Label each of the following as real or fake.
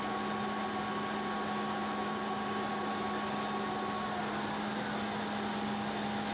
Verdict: real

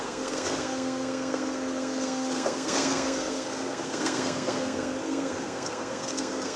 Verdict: fake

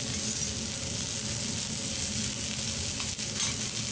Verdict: real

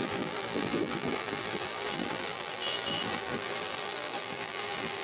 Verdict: fake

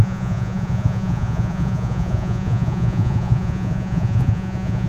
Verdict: fake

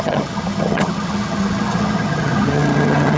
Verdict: fake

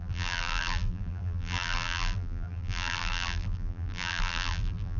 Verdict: fake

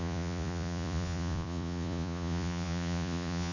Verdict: fake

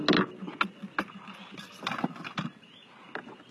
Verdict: real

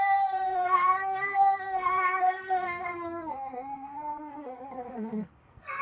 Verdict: fake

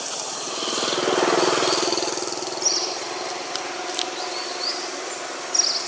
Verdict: real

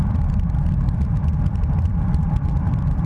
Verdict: fake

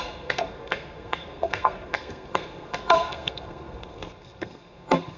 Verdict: fake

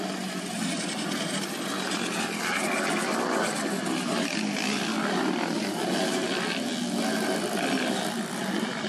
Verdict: real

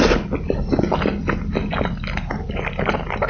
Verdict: real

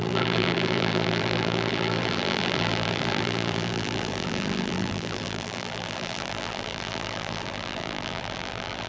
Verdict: fake